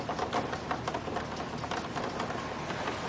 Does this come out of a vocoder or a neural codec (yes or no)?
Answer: no